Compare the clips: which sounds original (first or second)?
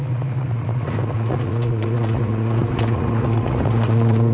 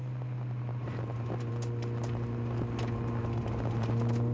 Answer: second